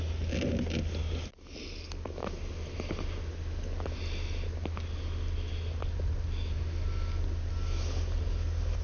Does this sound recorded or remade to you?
recorded